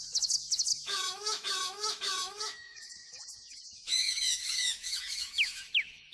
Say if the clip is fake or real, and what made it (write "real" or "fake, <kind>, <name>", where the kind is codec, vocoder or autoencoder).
fake, autoencoder, DAC-VAE